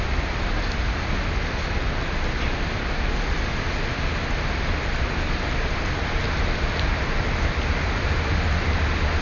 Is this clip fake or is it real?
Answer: real